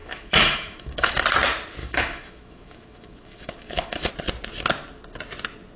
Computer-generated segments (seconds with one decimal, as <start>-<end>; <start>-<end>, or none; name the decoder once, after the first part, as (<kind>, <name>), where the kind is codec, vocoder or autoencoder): 0.0-1.2 (autoencoder, DAC-VAE); 1.8-4.1